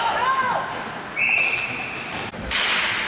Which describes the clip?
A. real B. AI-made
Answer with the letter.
A